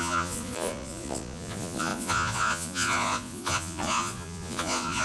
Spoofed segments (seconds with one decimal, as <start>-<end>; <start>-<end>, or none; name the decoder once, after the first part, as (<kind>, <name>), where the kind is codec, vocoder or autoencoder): 0.0-5.0 (vocoder, Vocos)